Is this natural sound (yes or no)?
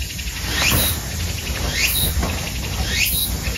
yes